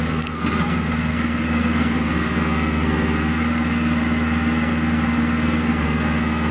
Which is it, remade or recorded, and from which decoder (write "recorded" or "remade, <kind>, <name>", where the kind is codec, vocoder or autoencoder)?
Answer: remade, codec, SNAC